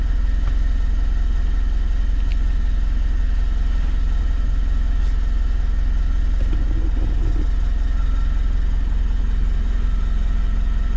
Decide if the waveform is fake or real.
real